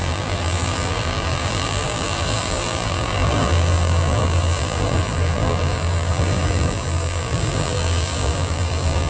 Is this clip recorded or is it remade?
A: remade